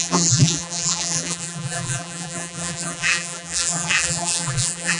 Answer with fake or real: fake